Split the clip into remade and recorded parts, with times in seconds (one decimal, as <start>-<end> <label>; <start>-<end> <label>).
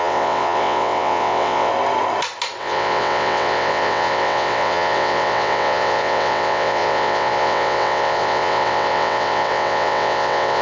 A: 0.0-1.7 remade; 1.7-2.6 recorded; 2.6-10.6 remade